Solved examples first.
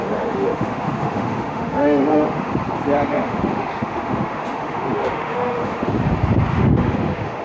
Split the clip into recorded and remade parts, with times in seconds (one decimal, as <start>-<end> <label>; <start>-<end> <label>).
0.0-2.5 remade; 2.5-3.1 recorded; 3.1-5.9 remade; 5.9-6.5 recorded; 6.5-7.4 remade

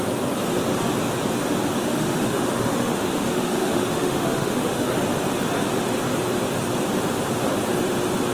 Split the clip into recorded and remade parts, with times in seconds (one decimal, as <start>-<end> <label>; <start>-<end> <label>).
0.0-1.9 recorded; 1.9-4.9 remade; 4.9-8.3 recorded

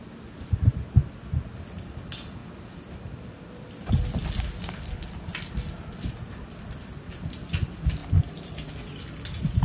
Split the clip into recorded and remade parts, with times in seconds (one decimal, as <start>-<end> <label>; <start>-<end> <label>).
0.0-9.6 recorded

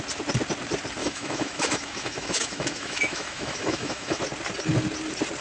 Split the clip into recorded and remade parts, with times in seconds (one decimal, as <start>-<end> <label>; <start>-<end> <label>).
0.0-1.0 recorded; 1.0-4.2 remade; 4.2-5.4 recorded